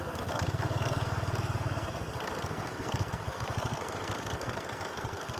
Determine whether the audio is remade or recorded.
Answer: remade